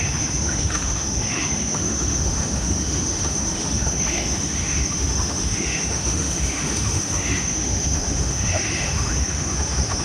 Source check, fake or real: fake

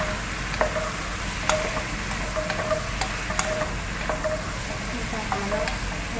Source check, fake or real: real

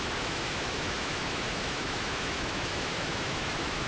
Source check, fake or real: fake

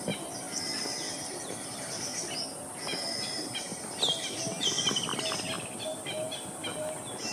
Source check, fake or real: real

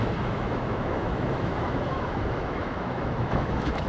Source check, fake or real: fake